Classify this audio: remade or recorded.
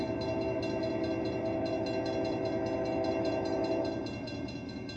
recorded